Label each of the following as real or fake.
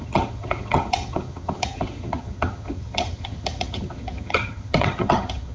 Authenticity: fake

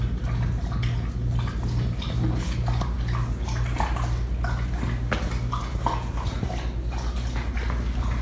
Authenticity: real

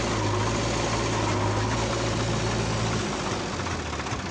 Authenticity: real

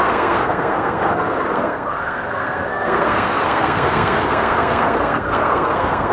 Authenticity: fake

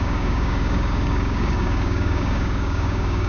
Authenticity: fake